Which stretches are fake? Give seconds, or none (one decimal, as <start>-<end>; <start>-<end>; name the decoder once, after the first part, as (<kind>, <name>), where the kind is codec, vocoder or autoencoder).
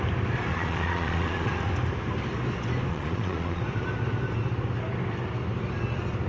0.5-1.5 (vocoder, Vocos); 2.9-3.6